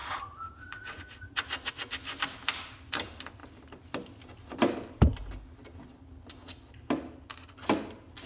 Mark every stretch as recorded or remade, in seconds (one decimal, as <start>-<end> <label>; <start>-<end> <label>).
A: 0.0-1.7 remade; 1.7-8.3 recorded